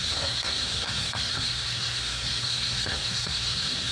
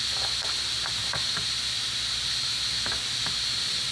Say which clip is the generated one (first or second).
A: first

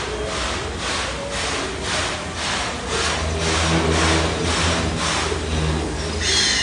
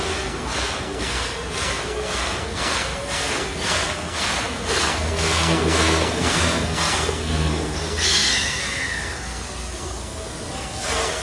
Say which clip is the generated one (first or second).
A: second